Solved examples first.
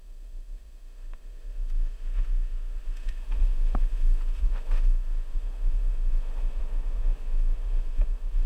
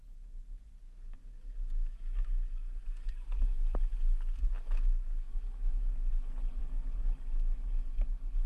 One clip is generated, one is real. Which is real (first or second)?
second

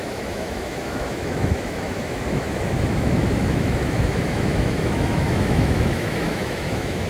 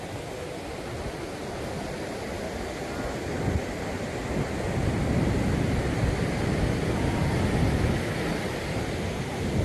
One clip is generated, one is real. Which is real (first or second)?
second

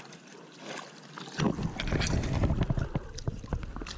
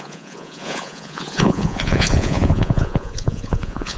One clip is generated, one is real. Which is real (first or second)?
first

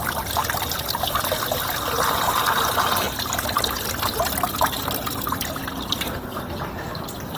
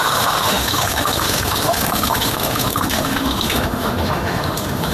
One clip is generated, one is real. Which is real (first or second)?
first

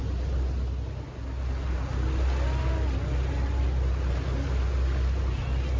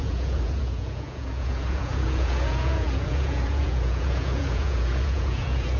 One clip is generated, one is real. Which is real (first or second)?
first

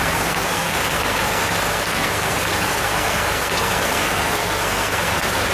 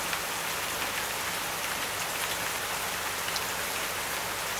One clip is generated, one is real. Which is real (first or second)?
second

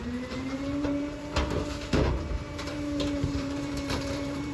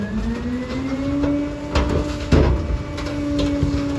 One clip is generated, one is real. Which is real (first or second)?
second